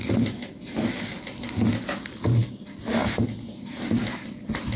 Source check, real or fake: real